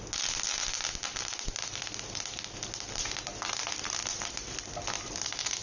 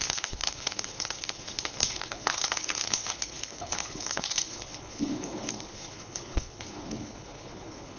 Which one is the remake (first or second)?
second